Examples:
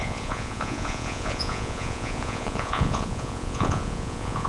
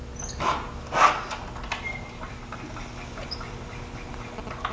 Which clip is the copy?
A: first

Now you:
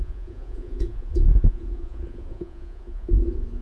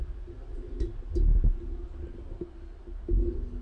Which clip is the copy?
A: first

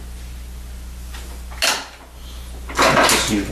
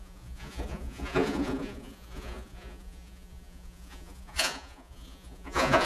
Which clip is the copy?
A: second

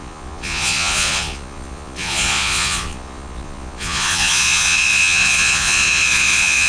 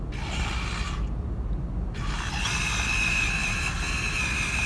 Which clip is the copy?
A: first